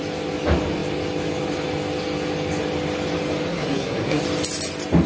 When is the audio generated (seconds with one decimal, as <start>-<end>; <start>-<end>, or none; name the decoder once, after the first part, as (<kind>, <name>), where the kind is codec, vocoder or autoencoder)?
3.5-4.2 (codec, SNAC)